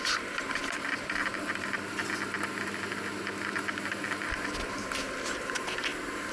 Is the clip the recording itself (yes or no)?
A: yes